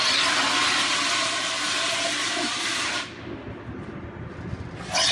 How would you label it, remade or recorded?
recorded